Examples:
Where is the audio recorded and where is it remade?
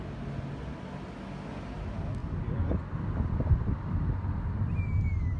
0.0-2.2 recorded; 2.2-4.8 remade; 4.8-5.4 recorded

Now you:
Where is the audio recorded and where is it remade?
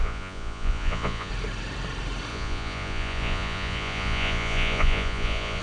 0.0-1.3 remade; 1.3-2.3 recorded; 2.3-5.6 remade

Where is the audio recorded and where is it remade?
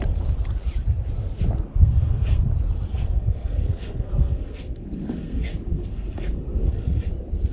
0.0-1.7 recorded; 1.7-2.5 remade; 2.5-2.9 recorded; 2.9-7.1 remade; 7.1-7.5 recorded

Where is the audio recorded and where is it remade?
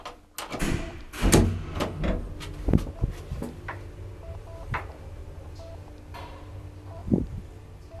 0.0-7.0 recorded; 7.0-7.6 remade; 7.6-8.0 recorded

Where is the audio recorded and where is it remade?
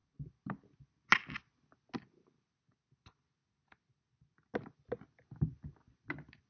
0.0-6.5 recorded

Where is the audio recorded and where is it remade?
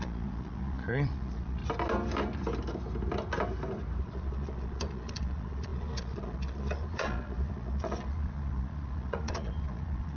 0.0-1.6 remade; 1.6-4.0 recorded; 4.0-10.2 remade